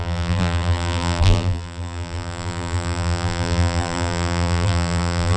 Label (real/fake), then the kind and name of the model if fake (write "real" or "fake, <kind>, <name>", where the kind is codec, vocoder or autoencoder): fake, vocoder, BigVGAN v2